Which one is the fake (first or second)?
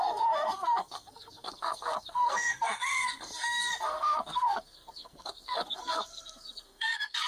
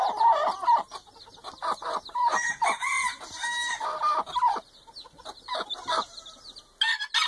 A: first